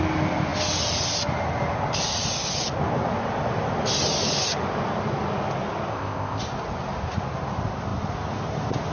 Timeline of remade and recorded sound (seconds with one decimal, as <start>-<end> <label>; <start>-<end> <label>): 0.0-5.9 recorded; 5.9-6.4 remade; 6.4-8.9 recorded